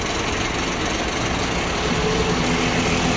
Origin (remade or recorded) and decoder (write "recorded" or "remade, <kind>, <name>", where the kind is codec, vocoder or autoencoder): recorded